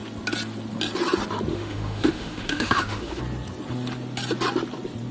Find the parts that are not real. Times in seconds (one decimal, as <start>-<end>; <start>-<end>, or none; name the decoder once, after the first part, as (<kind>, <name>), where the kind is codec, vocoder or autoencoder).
1.5-3.2 (autoencoder, DAC-VAE)